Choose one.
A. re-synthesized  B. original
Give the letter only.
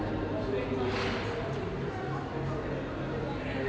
B